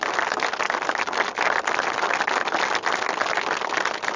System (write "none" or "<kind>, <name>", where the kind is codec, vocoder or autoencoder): none